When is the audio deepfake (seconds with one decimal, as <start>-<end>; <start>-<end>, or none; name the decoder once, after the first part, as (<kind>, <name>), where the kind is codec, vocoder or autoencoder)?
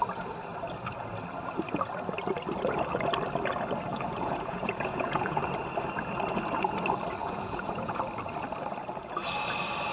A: 3.9-5.4 (vocoder, Vocos); 7.2-8.0